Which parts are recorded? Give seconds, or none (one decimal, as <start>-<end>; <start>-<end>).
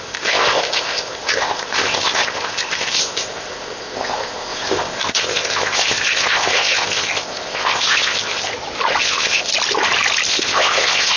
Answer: 8.5-9.0; 9.5-10.3